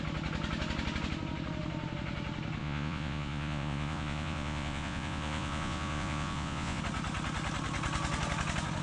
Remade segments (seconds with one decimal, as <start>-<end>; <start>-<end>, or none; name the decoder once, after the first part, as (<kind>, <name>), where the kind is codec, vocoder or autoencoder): 2.6-6.8 (vocoder, Vocos)